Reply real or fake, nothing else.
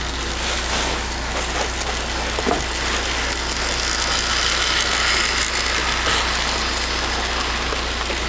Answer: real